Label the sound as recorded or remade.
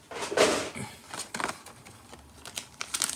recorded